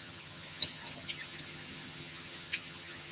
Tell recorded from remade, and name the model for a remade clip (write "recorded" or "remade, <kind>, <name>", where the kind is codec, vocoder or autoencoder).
remade, vocoder, HiFi-GAN